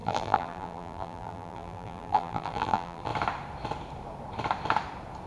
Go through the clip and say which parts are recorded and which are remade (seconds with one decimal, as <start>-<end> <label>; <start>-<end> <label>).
0.0-3.1 remade; 3.1-5.3 recorded